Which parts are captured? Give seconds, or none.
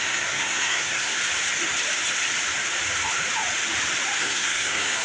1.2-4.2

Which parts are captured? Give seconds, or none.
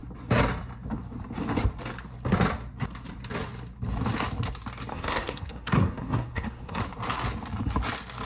0.0-4.9; 6.8-8.3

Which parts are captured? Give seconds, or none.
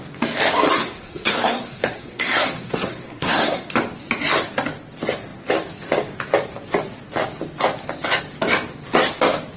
0.0-0.8; 3.7-9.6